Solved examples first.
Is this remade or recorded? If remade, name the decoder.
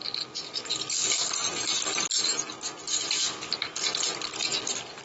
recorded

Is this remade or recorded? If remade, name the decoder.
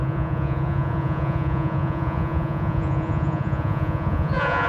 remade, vocoder, Vocos